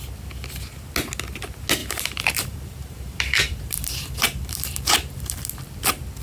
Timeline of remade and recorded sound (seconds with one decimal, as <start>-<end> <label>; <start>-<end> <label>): 0.0-1.8 recorded; 1.8-5.5 remade; 5.5-6.2 recorded